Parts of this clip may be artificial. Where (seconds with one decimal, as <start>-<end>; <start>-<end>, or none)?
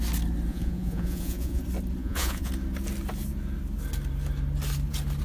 0.5-1.6; 2.0-2.5